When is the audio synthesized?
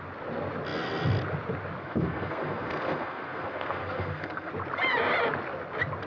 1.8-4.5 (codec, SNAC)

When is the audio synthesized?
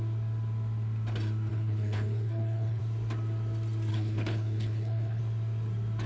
1.5-2.8 (codec, HILCodec); 3.9-5.2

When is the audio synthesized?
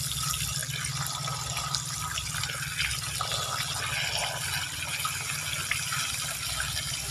none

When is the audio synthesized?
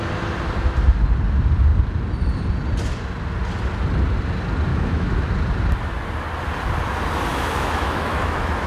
4.7-5.3 (autoencoder, DAC-VAE); 7.3-8.7